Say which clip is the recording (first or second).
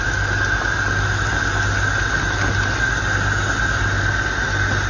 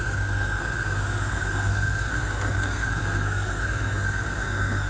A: first